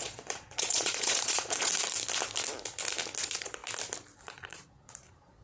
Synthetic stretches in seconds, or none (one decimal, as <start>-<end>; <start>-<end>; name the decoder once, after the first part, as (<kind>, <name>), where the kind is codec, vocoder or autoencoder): 0.0-1.7 (vocoder, Vocos); 3.2-3.6; 4.2-5.4